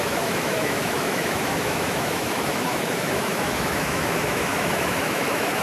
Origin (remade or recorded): remade